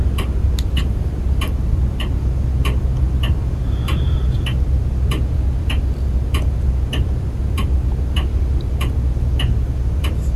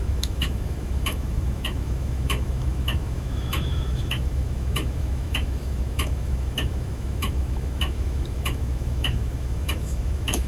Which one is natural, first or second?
first